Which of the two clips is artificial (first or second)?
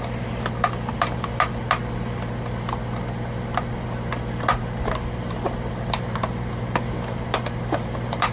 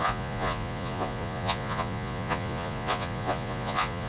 second